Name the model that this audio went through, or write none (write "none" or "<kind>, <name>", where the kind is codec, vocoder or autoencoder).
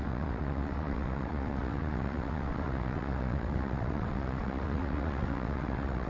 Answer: vocoder, WaveNeXt